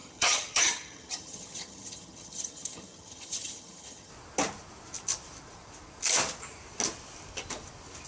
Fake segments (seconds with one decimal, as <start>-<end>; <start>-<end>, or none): 0.0-4.1